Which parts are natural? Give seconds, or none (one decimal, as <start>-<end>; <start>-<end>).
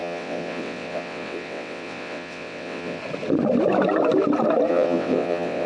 3.0-4.7